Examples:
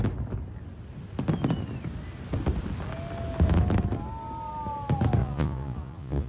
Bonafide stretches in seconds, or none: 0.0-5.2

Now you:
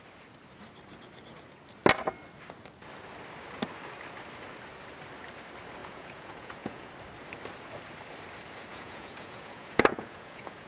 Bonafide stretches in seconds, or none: 0.0-5.8; 6.9-8.7

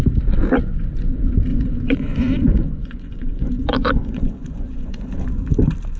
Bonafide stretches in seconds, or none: 0.0-1.5; 5.1-6.0

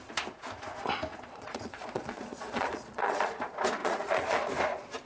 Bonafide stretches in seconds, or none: 0.0-1.1; 3.4-3.8; 4.5-5.1

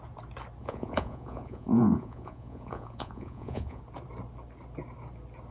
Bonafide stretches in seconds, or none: 0.0-0.6; 3.8-5.5

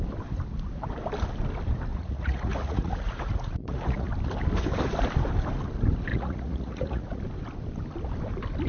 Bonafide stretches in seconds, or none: 0.0-1.9; 4.1-6.1; 7.2-8.7